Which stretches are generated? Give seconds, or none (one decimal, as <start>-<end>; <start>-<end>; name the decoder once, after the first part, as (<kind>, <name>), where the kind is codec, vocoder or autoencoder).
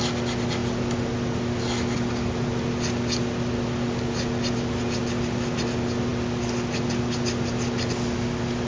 none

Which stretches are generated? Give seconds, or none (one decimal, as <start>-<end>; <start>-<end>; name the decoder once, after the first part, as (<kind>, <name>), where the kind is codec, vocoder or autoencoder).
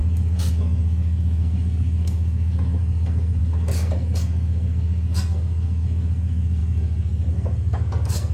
0.0-8.3 (codec, SNAC)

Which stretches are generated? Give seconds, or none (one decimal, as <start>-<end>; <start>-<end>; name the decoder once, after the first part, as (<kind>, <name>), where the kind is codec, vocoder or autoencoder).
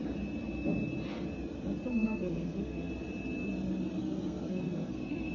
1.9-2.9 (codec, SNAC); 4.0-5.3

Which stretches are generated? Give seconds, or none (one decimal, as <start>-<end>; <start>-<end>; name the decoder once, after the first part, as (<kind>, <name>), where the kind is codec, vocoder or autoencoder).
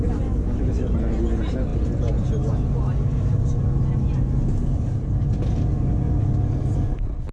none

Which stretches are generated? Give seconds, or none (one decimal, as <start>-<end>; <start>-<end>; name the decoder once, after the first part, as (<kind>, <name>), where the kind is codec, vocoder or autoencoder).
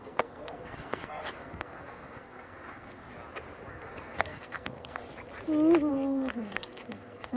0.0-3.1 (codec, SNAC); 3.7-5.0; 5.9-7.4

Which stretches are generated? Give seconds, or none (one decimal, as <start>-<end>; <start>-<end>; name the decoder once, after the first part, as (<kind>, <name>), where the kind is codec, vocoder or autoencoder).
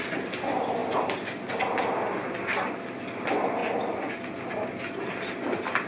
none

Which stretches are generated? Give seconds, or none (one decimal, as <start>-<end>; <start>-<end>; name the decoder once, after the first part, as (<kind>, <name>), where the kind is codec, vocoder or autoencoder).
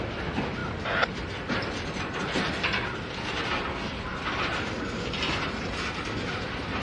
none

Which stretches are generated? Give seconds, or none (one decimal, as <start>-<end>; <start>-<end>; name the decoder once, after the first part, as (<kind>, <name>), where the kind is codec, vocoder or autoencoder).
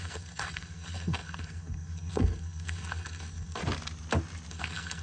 0.0-3.6 (codec, SNAC); 4.5-5.0